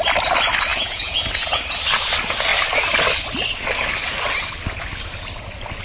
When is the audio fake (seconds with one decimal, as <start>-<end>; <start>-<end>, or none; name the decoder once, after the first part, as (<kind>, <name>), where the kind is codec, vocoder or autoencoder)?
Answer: 0.7-1.6 (vocoder, Vocos)